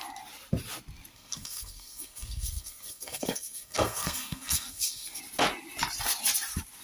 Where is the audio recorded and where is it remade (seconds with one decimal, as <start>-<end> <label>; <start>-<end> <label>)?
0.0-1.1 recorded; 1.1-5.2 remade; 5.2-6.8 recorded